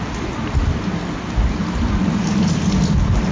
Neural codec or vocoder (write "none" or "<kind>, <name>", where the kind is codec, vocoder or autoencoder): none